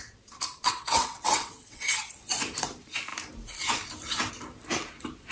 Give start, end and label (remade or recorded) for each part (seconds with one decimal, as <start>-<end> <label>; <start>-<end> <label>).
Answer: 0.0-0.6 recorded; 0.6-2.1 remade; 2.1-5.3 recorded